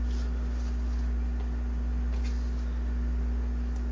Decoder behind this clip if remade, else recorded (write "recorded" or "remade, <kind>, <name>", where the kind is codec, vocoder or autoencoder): recorded